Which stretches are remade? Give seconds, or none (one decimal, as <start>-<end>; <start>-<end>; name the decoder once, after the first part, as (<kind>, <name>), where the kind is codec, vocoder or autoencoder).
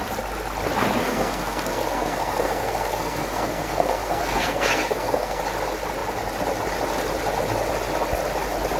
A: 1.0-5.4 (codec, SNAC)